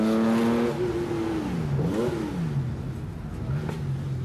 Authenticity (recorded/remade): recorded